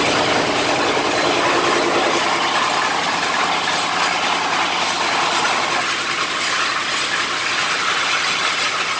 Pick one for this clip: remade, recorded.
recorded